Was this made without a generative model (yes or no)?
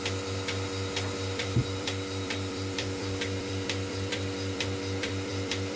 no